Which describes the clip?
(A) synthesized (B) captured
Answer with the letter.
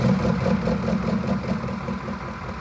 B